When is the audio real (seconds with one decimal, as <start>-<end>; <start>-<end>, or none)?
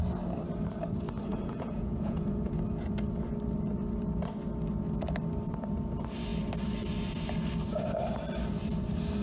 0.0-1.3; 2.5-9.2